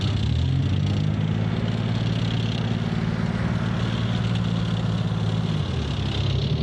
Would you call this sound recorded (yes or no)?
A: yes